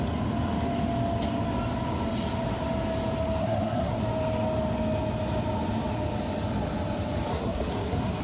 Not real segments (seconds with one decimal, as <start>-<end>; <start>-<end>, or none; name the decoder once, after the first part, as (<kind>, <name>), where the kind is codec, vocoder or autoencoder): 3.4-4.0 (codec, SNAC); 7.3-8.2